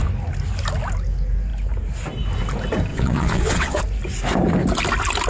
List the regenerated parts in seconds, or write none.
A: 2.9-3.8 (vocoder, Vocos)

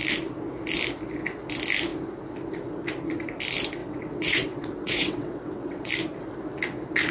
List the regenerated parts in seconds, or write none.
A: 3.8-5.9 (vocoder, WaveNeXt)

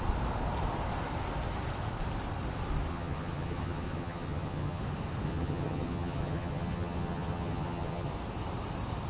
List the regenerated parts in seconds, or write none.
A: 2.9-4.8 (vocoder, HiFi-GAN); 5.3-8.1